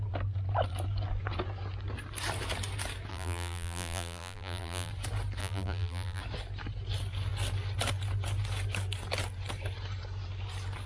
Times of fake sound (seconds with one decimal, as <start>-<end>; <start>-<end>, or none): 3.1-4.9; 5.4-6.2

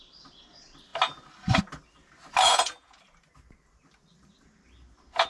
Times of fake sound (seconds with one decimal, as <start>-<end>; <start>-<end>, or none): 2.5-3.0

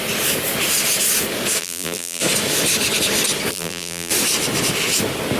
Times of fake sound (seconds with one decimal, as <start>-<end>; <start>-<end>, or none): 1.6-2.2; 3.5-4.1

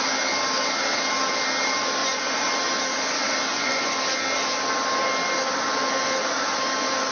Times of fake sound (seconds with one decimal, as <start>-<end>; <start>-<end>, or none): 2.0-2.5; 3.5-4.0